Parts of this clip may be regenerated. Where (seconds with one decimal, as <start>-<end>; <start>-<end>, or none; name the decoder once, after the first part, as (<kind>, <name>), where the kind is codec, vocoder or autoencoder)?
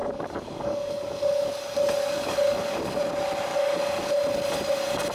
0.0-1.5 (codec, DAC); 2.0-3.0; 3.5-4.1